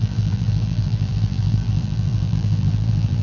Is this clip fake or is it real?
fake